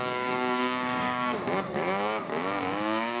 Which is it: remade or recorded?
remade